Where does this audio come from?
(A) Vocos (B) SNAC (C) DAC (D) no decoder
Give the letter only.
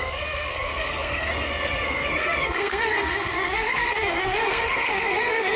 B